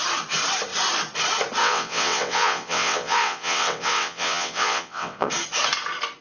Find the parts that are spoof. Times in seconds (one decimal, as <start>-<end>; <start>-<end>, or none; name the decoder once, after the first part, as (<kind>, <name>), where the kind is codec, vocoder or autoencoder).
1.6-5.3 (vocoder, WaveNeXt)